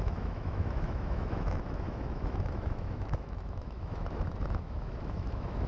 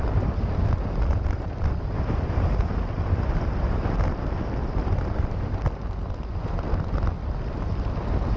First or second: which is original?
second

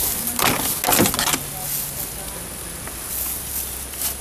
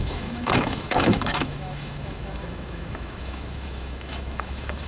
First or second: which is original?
first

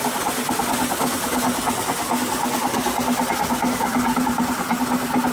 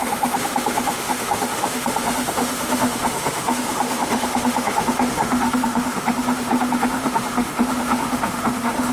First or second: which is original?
first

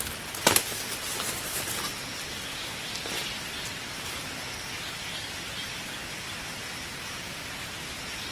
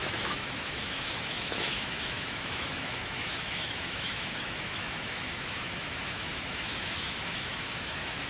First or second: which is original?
first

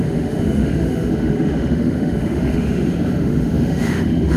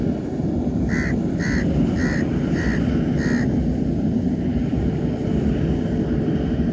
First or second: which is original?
second